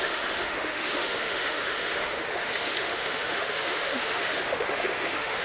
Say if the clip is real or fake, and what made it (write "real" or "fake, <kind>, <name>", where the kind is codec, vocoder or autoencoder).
fake, autoencoder, DAC-VAE